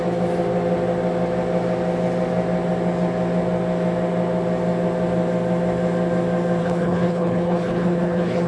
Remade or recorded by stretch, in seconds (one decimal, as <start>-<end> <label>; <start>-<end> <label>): 0.0-6.6 recorded; 6.6-8.5 remade